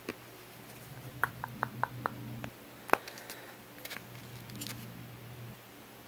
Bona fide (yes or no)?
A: yes